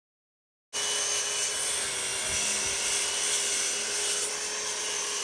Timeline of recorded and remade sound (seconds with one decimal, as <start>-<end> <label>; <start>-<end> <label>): 0.0-5.2 recorded